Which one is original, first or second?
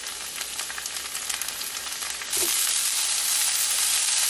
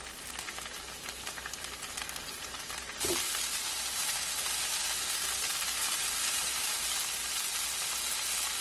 first